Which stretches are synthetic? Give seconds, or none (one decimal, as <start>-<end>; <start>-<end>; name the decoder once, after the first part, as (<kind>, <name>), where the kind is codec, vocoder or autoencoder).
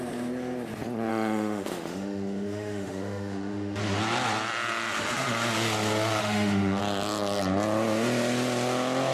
1.1-3.8 (autoencoder, DAC-VAE); 6.2-6.8